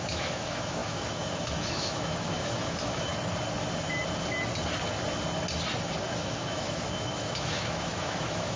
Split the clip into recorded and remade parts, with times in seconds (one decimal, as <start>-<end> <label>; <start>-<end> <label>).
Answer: 0.0-3.1 remade; 3.1-6.1 recorded; 6.1-8.6 remade